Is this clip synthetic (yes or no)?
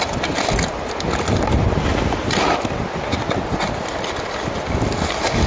no